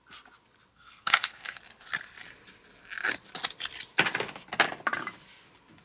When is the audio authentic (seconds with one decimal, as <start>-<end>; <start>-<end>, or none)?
0.0-0.7; 1.6-5.8